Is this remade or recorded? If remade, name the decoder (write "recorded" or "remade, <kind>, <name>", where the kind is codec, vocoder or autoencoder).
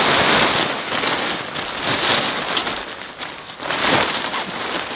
recorded